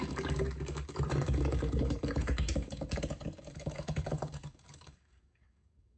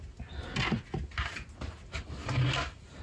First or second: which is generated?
first